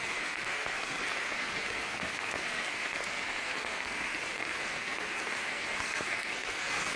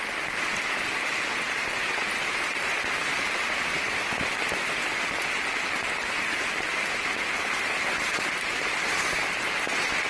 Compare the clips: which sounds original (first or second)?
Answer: second